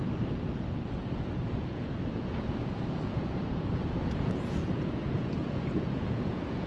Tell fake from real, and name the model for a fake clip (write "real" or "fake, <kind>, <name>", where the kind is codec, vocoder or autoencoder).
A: fake, vocoder, Vocos